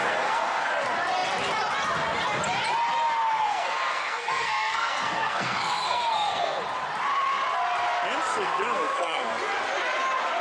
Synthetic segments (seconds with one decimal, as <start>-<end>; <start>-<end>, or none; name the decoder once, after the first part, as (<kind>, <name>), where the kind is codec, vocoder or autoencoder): 0.0-0.7 (codec, SNAC); 3.4-6.6; 8.3-9.3